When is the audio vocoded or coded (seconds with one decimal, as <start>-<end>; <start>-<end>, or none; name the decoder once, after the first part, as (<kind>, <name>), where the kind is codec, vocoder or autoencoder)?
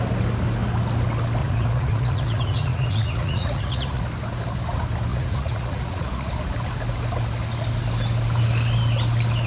1.4-4.0 (vocoder, Vocos); 5.1-6.3